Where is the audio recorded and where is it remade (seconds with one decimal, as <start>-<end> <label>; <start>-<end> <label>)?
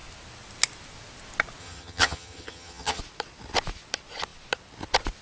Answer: 0.0-1.6 recorded; 1.6-3.0 remade; 3.0-5.2 recorded